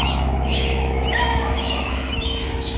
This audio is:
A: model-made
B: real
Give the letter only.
A